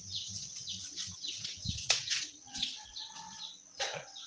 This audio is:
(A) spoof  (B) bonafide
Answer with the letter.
A